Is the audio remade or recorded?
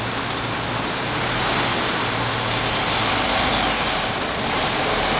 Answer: recorded